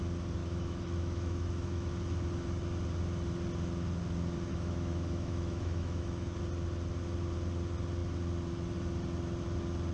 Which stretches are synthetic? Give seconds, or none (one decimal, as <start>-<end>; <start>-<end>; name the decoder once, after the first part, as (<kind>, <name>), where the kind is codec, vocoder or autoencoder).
0.4-1.9 (autoencoder, DAC-VAE); 4.5-6.4